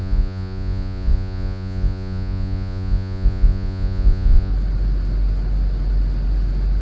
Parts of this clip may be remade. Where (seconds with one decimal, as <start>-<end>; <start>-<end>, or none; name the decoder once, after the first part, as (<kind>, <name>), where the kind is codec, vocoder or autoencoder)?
0.0-4.5 (vocoder, Vocos)